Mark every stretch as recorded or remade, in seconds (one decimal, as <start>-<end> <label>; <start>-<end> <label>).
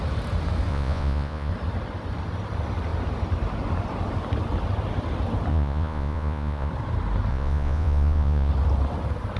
0.0-0.7 recorded; 0.7-1.5 remade; 1.5-5.5 recorded; 5.5-6.7 remade; 6.7-7.3 recorded; 7.3-8.5 remade; 8.5-9.4 recorded